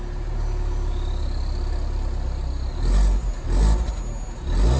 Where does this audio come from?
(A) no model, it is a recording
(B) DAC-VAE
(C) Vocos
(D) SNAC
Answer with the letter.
A